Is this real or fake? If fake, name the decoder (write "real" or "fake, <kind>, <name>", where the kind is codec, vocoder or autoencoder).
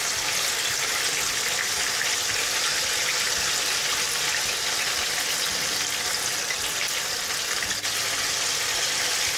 real